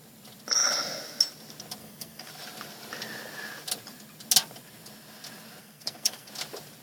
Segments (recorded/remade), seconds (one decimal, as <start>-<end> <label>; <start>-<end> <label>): 0.0-1.8 recorded; 1.8-2.3 remade; 2.3-5.6 recorded; 5.6-6.3 remade; 6.3-6.8 recorded